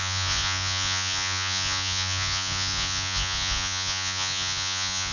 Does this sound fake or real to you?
fake